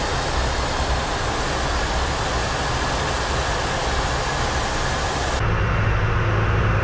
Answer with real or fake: real